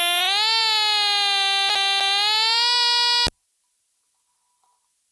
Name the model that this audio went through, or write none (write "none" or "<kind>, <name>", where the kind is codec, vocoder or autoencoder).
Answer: none